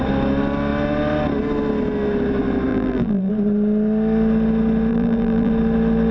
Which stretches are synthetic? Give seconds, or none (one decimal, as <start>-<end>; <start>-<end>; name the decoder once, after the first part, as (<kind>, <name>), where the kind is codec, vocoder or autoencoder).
2.7-3.3 (vocoder, BigVGAN v2); 4.9-5.5